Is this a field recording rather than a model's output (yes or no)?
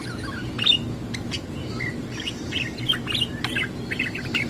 yes